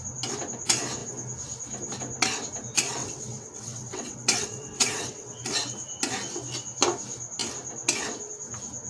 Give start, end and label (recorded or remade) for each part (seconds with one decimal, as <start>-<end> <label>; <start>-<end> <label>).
0.0-3.0 recorded; 3.0-5.4 remade; 5.4-8.9 recorded